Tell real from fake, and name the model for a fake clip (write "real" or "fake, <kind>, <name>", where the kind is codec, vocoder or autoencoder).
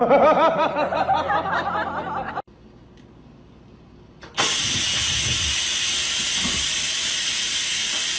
real